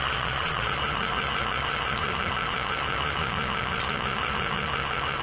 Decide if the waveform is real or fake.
fake